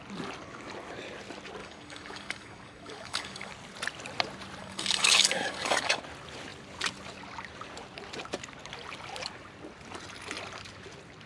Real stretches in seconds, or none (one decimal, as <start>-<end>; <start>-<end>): 0.0-1.6; 3.5-4.6; 6.0-11.3